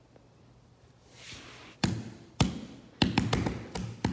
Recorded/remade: recorded